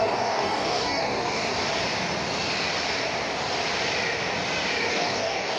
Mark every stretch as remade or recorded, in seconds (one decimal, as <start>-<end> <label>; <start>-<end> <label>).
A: 0.0-1.5 remade; 1.5-4.9 recorded; 4.9-5.6 remade

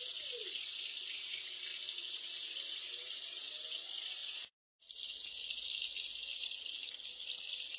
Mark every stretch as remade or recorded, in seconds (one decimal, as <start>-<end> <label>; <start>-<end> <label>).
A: 0.0-7.8 recorded

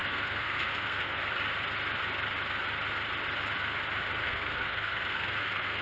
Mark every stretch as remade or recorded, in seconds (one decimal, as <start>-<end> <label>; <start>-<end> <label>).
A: 0.0-1.2 remade; 1.2-4.2 recorded; 4.2-5.8 remade

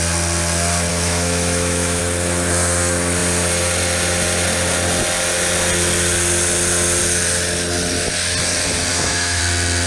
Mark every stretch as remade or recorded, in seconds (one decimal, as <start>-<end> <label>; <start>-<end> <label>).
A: 0.0-0.9 recorded; 0.9-2.0 remade; 2.0-8.9 recorded; 8.9-9.4 remade; 9.4-9.9 recorded